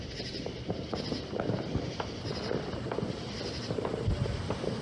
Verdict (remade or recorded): recorded